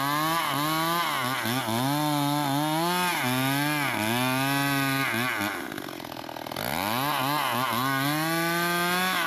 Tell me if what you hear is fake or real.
real